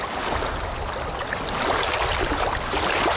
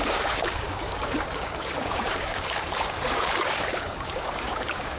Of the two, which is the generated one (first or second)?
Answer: second